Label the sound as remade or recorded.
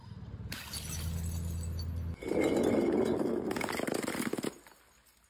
recorded